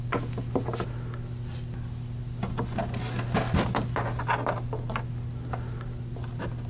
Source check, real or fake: real